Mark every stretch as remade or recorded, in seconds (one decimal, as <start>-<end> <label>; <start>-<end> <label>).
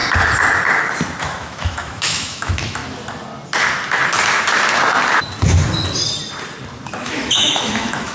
0.0-1.2 recorded; 1.2-2.8 remade; 2.8-7.0 recorded; 7.0-8.1 remade